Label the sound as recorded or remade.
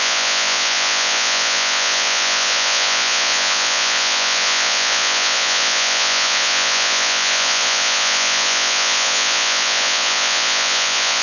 remade